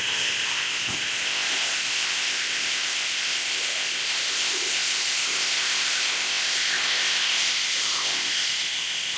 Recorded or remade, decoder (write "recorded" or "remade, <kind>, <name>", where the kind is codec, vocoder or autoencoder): remade, codec, ZipCodec